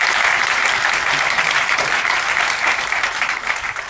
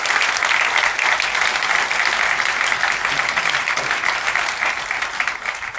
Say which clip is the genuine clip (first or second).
second